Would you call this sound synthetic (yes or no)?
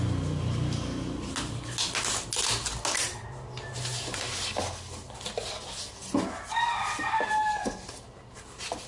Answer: no